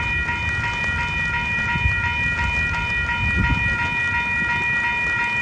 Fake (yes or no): no